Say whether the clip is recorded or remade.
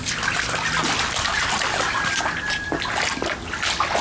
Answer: recorded